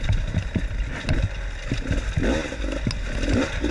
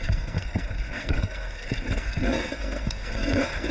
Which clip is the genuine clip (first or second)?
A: first